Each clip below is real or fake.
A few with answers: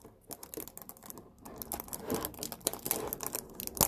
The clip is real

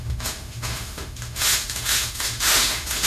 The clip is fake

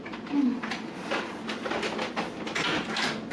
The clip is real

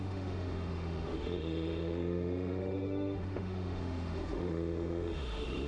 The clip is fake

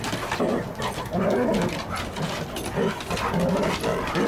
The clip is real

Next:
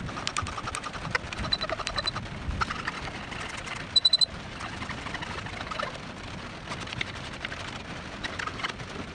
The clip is real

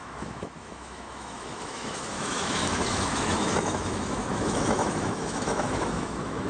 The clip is fake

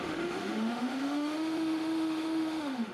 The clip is fake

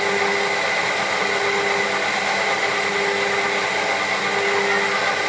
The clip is real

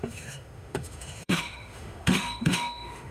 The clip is fake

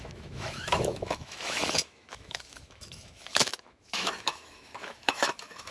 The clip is fake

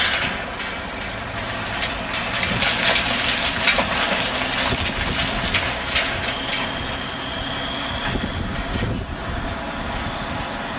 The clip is real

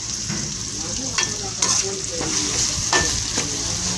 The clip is real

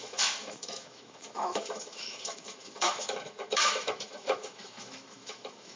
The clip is fake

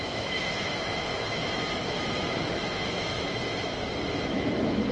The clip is fake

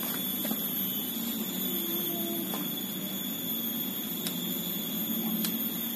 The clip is real